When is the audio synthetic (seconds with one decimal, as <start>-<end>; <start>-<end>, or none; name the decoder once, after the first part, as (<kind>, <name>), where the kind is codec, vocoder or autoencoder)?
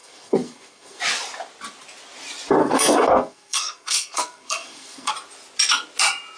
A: 0.0-1.0 (codec, SNAC); 2.6-5.1